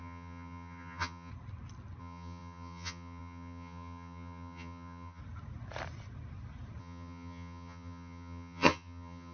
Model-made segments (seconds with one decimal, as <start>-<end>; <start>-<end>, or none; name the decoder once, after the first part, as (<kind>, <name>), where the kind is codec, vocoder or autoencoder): 0.0-1.3 (vocoder, HiFi-GAN); 2.0-5.2; 6.8-9.3